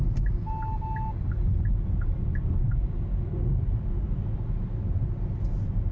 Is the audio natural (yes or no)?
yes